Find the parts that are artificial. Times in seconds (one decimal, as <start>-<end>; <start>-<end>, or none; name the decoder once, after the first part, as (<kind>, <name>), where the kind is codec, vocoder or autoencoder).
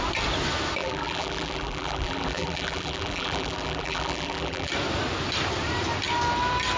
0.8-4.7 (vocoder, BigVGAN v2)